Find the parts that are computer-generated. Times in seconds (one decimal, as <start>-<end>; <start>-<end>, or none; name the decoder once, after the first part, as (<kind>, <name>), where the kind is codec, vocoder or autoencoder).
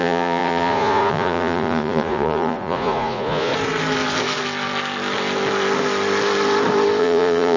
0.0-3.5 (vocoder, Vocos); 7.0-7.6